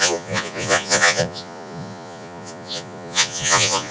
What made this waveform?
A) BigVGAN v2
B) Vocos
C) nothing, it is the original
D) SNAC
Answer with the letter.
B